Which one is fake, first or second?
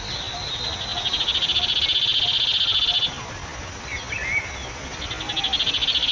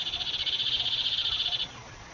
second